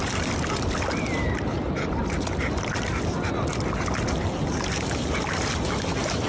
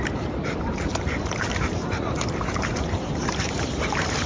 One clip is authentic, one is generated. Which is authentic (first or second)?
first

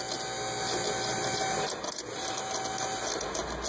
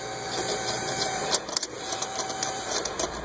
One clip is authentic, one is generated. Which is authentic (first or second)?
first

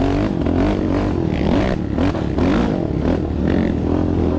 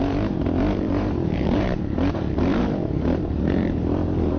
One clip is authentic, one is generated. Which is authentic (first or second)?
first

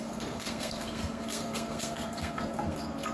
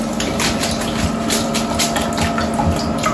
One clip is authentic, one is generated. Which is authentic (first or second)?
second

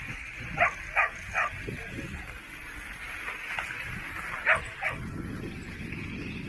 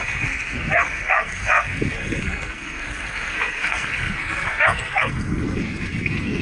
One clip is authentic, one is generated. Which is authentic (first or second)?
first